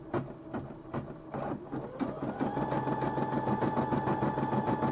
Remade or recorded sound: recorded